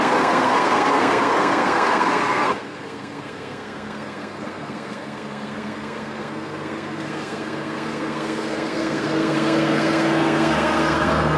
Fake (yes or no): yes